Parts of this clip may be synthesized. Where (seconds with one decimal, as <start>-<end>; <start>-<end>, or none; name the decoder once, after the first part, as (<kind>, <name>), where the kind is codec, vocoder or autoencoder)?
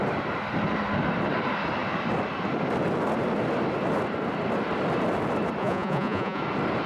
5.6-6.4 (vocoder, Vocos)